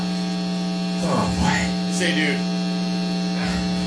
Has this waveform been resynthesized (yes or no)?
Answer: no